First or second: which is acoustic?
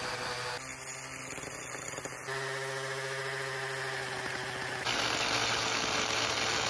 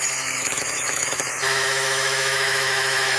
first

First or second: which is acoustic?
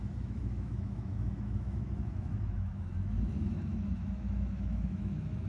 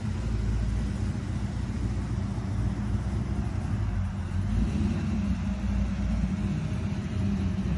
second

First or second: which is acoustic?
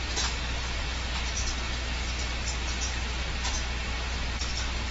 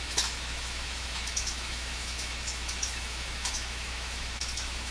first